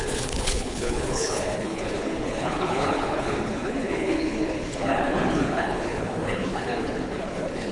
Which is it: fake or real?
fake